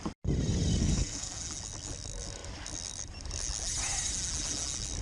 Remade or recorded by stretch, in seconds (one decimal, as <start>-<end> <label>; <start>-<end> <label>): 0.0-0.8 recorded; 0.8-1.4 remade; 1.4-5.0 recorded